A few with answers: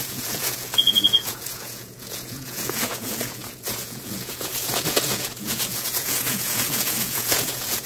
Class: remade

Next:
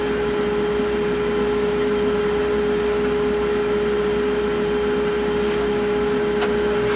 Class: recorded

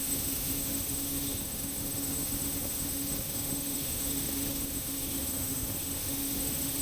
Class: remade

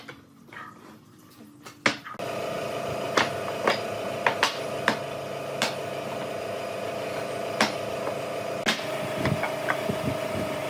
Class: recorded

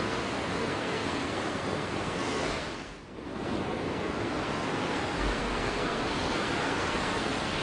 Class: remade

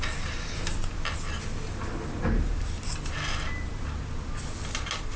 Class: recorded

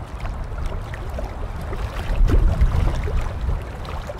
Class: recorded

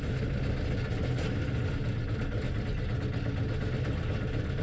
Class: recorded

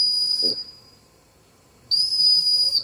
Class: remade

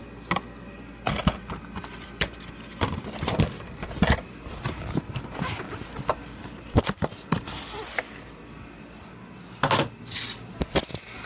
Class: recorded